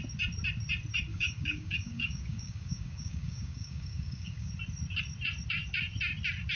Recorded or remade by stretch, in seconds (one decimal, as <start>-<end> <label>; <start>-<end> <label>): 0.0-1.1 recorded; 1.1-4.5 remade; 4.5-6.6 recorded